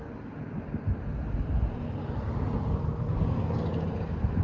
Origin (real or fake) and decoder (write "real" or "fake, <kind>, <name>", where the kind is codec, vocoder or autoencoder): real